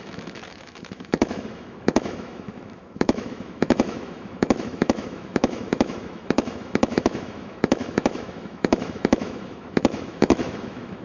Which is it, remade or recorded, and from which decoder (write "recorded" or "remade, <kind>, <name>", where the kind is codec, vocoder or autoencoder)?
remade, autoencoder, DAC-VAE